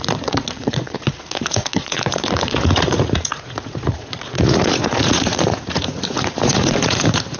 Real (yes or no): no